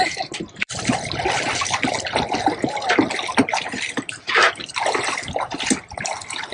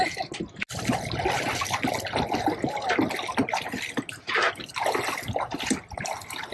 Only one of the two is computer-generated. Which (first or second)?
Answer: first